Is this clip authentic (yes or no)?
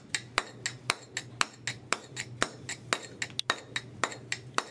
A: yes